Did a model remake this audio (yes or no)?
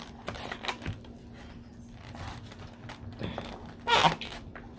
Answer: no